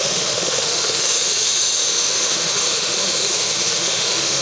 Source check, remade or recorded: remade